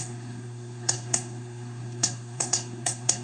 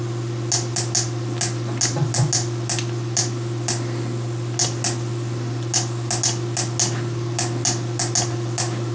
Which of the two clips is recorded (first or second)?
second